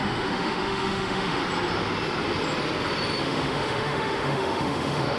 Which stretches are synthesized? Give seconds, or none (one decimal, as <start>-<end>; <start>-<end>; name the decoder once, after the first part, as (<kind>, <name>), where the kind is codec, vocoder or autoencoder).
0.0-1.4 (autoencoder, DAC-VAE); 3.2-5.2